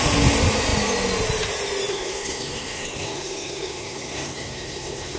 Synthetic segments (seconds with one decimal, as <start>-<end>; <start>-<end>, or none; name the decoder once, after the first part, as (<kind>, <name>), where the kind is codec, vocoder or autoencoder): 1.9-5.2 (codec, SNAC)